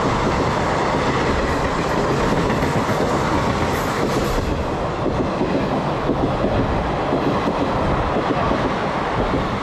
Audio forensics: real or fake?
real